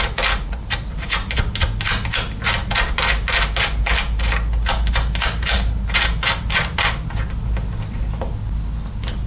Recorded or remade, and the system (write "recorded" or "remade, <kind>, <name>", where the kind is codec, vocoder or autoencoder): recorded